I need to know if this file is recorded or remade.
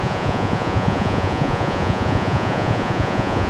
remade